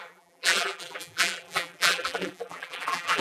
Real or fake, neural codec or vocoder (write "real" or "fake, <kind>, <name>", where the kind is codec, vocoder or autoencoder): fake, vocoder, BigVGAN v2